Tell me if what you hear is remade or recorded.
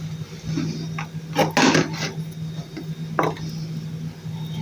recorded